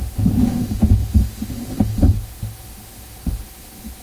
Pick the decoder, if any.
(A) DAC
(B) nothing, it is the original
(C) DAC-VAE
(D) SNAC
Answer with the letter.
C